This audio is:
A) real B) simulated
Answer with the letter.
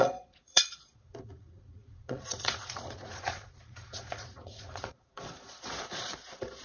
B